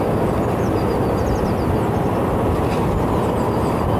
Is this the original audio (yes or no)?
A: yes